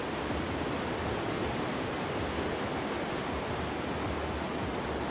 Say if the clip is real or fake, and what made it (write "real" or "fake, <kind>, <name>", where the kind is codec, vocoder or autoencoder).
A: real